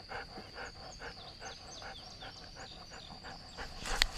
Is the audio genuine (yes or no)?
yes